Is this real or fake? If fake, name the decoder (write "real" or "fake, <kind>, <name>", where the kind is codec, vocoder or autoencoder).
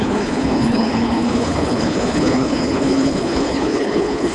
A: fake, codec, HILCodec